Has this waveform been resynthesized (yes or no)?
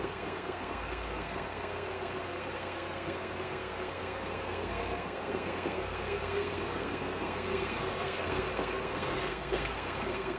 yes